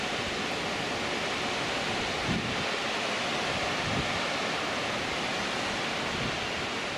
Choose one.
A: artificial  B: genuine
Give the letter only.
B